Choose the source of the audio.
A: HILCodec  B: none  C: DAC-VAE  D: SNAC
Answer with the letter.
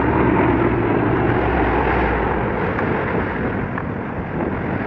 B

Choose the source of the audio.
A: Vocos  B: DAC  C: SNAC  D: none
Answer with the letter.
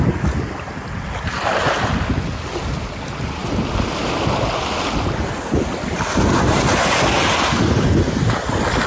D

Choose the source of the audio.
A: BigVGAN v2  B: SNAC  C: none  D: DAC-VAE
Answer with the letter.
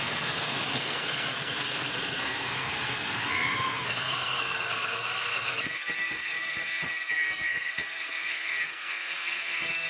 B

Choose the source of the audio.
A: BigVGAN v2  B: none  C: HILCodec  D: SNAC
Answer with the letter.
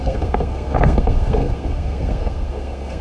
D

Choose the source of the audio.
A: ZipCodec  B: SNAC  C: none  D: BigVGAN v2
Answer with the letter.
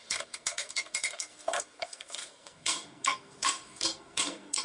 B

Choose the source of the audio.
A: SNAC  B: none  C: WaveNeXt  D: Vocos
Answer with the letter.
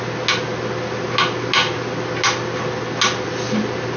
B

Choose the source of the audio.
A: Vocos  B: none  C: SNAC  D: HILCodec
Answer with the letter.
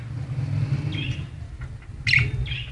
B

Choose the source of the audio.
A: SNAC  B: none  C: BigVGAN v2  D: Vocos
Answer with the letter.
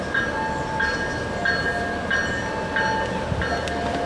B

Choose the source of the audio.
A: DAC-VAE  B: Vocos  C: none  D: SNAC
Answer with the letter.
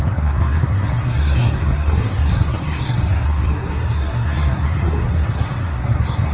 D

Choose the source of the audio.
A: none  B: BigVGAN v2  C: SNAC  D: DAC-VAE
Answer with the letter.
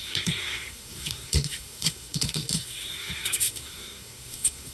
C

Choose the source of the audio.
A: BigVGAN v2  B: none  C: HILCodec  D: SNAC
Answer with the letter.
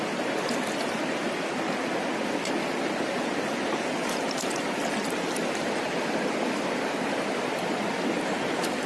B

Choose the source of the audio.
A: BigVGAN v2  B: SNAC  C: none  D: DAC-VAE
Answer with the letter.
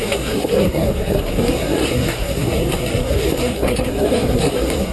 B